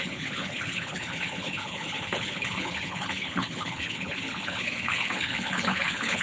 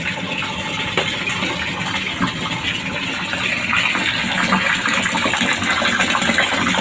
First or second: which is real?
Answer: second